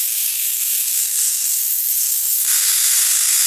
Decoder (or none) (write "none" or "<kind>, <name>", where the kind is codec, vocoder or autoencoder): codec, SNAC